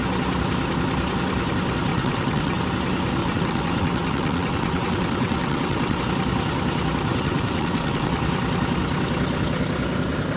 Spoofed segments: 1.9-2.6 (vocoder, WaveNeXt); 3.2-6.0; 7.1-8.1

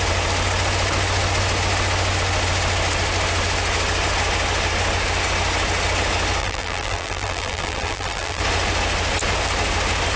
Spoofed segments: 6.4-8.4 (vocoder, BigVGAN v2)

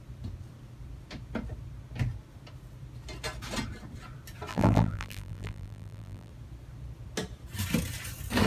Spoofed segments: 4.5-6.3 (vocoder, BigVGAN v2)